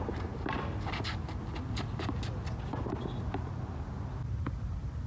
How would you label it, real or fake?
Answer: real